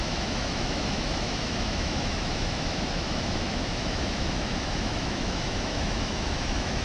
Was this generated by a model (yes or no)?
yes